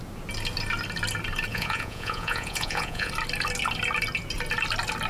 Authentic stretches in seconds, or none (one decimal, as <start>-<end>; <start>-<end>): 0.0-1.5; 3.1-5.1